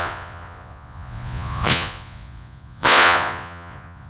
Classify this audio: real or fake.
fake